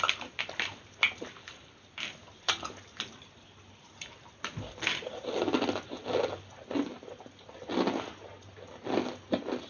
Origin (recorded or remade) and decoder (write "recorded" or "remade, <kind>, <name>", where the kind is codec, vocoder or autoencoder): recorded